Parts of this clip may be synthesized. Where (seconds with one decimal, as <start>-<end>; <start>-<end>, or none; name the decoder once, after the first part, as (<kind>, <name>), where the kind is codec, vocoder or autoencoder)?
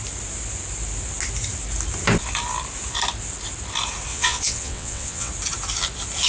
4.1-5.3 (vocoder, WaveNeXt)